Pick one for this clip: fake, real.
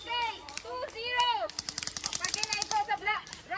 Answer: real